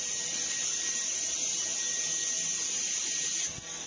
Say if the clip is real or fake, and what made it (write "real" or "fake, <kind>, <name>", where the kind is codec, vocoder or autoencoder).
real